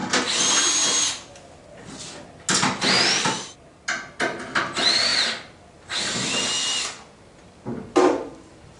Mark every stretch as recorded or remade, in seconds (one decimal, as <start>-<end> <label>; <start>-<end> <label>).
0.0-8.8 recorded